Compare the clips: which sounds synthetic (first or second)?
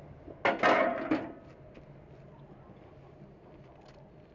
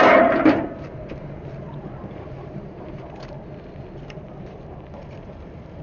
second